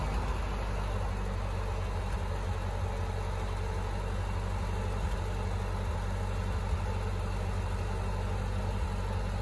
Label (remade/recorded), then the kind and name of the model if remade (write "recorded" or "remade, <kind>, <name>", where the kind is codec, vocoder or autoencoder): recorded